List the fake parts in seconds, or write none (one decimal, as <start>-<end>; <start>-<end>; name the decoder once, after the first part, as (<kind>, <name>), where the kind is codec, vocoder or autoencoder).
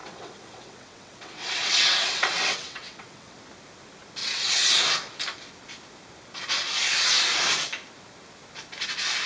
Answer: 0.0-3.3 (vocoder, WaveNeXt); 4.2-4.8